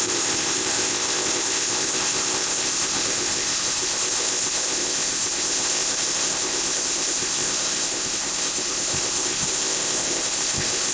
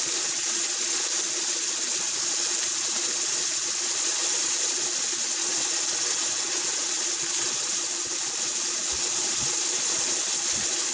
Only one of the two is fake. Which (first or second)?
first